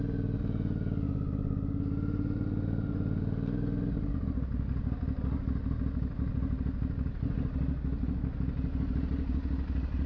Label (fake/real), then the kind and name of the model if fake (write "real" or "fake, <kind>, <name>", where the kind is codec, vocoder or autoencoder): real